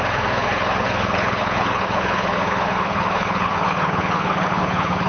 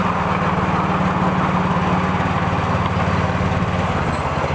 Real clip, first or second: second